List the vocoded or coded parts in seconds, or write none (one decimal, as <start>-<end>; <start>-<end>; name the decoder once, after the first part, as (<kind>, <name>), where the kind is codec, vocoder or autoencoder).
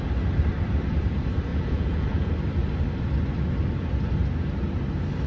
1.5-2.3 (vocoder, Vocos)